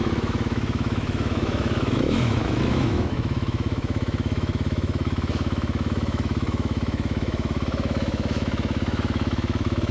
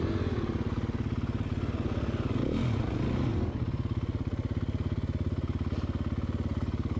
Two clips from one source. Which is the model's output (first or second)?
first